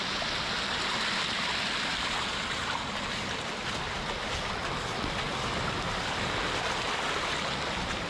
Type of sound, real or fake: real